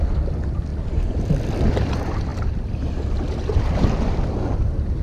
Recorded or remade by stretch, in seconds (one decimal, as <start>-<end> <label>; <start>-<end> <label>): 0.0-5.0 recorded

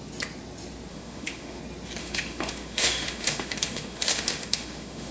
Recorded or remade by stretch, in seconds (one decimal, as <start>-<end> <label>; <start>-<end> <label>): 0.0-0.9 recorded; 0.9-1.6 remade; 1.6-2.0 recorded; 2.0-5.1 remade

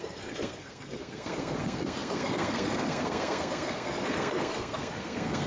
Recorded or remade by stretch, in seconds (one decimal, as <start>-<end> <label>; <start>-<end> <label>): 0.0-5.5 remade

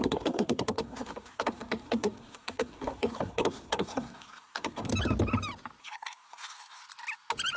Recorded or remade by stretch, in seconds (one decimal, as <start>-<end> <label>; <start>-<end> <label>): 0.0-4.9 remade; 4.9-5.8 recorded; 5.8-6.8 remade; 6.8-7.6 recorded

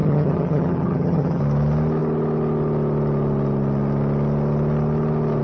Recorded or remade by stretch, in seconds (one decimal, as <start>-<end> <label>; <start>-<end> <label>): 0.0-1.4 remade; 1.4-5.4 recorded

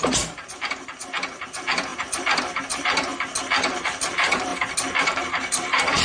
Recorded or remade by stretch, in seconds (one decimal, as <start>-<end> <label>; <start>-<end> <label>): 0.0-3.1 remade; 3.1-3.7 recorded; 3.7-4.5 remade; 4.5-5.0 recorded; 5.0-6.0 remade